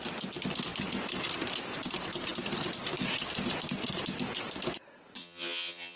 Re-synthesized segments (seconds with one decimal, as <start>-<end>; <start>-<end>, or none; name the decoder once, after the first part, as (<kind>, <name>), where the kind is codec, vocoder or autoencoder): 5.2-6.0 (vocoder, HiFi-GAN)